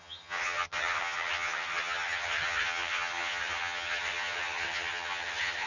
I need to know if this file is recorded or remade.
remade